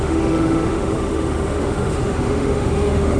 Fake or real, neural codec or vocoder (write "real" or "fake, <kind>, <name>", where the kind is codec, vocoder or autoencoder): fake, autoencoder, DAC-VAE